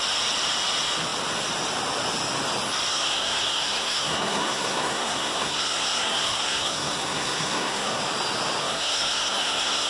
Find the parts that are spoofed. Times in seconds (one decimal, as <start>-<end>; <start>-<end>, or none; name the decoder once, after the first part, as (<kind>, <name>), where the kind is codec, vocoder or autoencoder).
2.9-8.0 (codec, SNAC); 8.6-9.9